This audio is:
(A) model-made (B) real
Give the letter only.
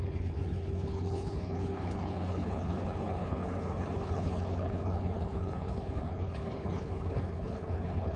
A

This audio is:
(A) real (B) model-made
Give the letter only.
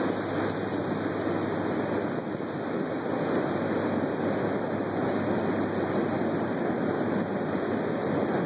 A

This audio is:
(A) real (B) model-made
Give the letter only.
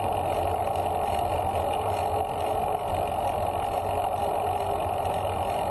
A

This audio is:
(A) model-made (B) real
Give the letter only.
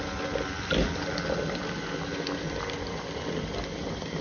B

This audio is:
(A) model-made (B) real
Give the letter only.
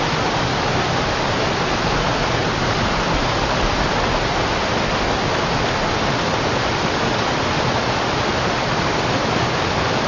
B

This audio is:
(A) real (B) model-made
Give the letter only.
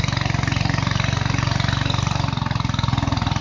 A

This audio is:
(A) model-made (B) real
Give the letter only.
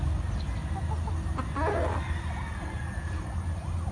B